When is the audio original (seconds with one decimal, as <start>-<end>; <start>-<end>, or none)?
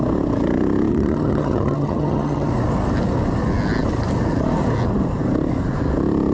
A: 0.0-0.9; 2.5-6.3